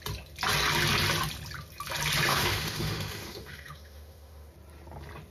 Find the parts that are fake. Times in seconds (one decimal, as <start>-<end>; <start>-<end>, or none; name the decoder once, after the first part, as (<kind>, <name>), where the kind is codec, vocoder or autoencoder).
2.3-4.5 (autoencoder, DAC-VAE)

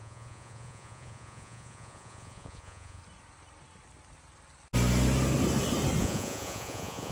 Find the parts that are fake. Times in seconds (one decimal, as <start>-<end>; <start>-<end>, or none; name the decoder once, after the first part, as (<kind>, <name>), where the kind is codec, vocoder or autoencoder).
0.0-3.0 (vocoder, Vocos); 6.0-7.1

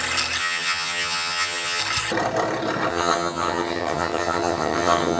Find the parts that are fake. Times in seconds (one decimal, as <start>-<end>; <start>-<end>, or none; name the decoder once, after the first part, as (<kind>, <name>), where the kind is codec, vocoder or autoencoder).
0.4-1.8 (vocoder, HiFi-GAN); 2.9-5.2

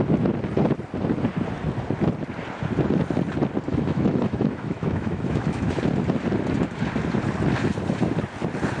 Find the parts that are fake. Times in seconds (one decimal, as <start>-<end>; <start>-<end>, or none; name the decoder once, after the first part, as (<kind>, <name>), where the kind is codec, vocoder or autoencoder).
3.7-5.8 (autoencoder, DAC-VAE)